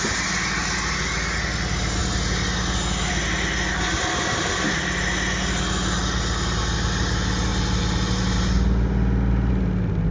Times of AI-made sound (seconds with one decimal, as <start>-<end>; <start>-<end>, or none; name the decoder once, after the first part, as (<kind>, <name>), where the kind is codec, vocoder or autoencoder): none